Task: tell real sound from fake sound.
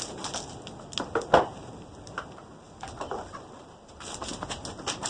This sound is real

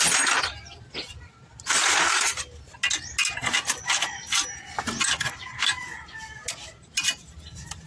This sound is real